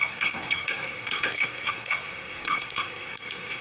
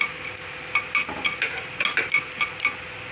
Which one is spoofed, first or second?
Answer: first